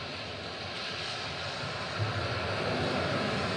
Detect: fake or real real